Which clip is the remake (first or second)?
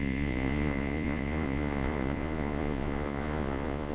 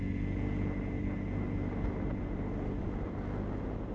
first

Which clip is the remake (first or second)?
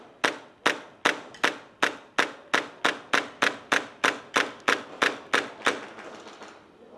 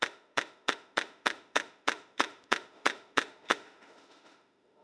second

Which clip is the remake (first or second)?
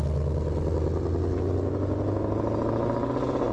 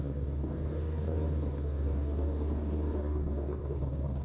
second